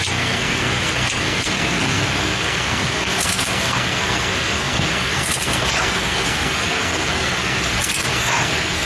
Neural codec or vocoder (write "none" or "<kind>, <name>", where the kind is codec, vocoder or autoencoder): codec, SNAC